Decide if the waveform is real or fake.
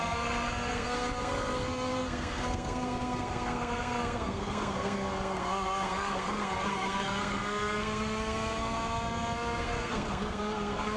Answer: fake